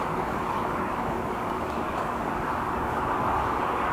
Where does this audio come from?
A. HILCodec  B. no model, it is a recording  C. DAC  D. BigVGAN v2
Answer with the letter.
C